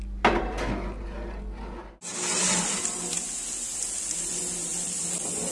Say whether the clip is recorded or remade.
recorded